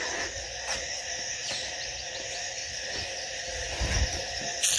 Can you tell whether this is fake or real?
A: real